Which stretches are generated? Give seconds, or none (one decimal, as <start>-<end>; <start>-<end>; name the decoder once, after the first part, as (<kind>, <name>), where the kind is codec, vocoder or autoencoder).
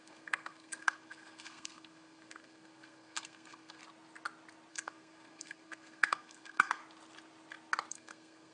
0.0-3.8 (codec, SNAC); 4.7-6.8; 7.9-8.5